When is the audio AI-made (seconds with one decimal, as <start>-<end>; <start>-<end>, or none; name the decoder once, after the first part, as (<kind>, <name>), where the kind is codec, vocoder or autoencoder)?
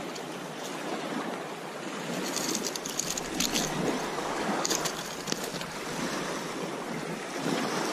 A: 4.2-4.8 (codec, DAC)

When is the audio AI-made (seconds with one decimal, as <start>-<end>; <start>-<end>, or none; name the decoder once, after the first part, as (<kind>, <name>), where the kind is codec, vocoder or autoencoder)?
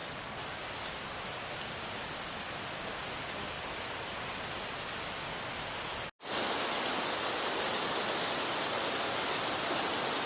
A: none